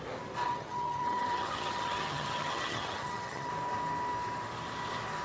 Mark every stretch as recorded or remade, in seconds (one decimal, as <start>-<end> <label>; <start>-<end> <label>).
0.0-0.4 recorded; 0.4-3.5 remade; 3.5-5.2 recorded